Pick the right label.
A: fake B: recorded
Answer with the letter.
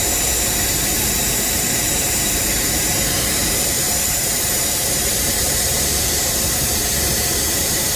A